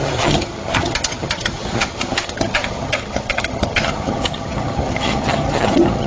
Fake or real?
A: fake